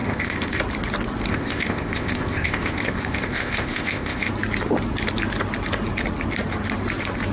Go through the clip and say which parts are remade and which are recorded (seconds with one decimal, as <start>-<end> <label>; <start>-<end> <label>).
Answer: 0.0-0.6 remade; 0.6-1.3 recorded; 1.3-4.3 remade; 4.3-7.3 recorded